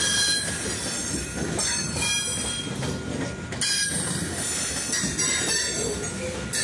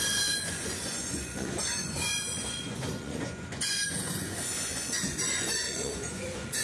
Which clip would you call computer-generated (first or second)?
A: second